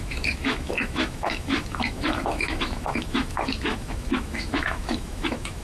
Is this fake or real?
fake